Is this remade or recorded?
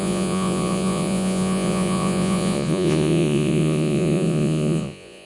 remade